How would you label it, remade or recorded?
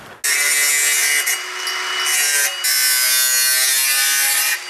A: recorded